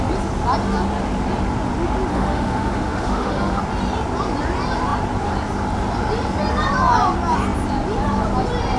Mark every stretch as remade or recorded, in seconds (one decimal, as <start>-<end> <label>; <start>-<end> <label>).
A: 0.0-2.1 recorded; 2.1-3.6 remade; 3.6-8.8 recorded